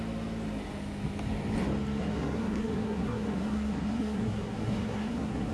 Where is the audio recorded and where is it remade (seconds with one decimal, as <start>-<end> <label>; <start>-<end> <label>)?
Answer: 0.0-2.0 recorded; 2.0-5.5 remade

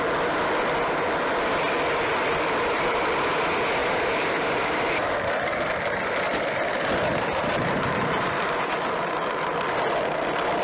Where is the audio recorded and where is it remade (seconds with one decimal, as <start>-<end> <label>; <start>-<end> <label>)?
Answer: 0.0-3.8 recorded; 3.8-5.1 remade; 5.1-7.1 recorded; 7.1-8.5 remade; 8.5-10.6 recorded

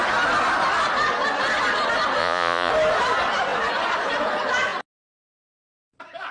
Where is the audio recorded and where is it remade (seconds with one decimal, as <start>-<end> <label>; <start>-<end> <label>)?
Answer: 0.0-2.2 recorded; 2.2-2.7 remade; 2.7-6.3 recorded

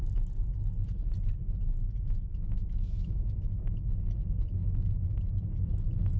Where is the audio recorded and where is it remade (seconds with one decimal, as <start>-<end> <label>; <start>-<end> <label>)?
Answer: 0.0-2.3 recorded; 2.3-3.9 remade; 3.9-4.6 recorded; 4.6-5.2 remade; 5.2-6.2 recorded

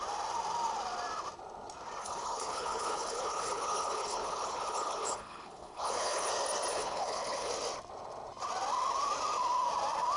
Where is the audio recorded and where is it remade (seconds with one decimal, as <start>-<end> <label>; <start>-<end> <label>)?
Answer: 0.0-2.0 recorded; 2.0-6.3 remade; 6.3-6.7 recorded; 6.7-7.5 remade; 7.5-10.2 recorded

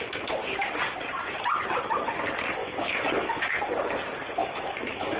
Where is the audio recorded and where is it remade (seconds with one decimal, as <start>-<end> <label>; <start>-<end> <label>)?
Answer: 0.0-2.6 recorded; 2.6-3.4 remade; 3.4-4.4 recorded; 4.4-5.2 remade

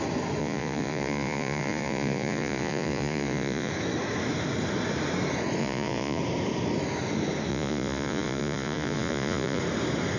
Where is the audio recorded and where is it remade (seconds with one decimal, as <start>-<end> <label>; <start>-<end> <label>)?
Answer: 0.0-0.4 recorded; 0.4-3.7 remade; 3.7-5.6 recorded; 5.6-6.2 remade; 6.2-7.5 recorded; 7.5-9.6 remade; 9.6-10.2 recorded

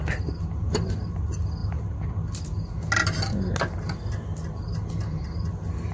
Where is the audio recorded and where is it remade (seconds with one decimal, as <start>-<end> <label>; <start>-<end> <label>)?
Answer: 0.0-5.9 recorded